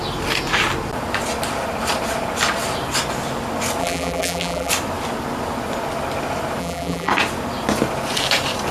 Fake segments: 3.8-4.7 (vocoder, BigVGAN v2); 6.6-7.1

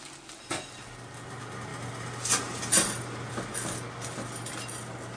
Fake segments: 1.7-3.3 (vocoder, BigVGAN v2)

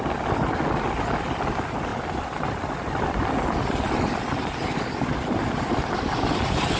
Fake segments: none

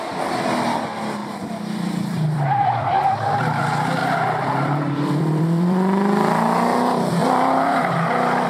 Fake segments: 1.2-3.0 (vocoder, BigVGAN v2); 4.0-6.3; 7.2-7.8

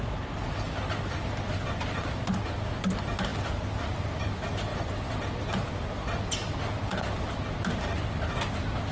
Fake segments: none

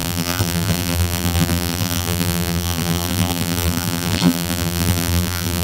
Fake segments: 0.0-5.6 (vocoder, BigVGAN v2)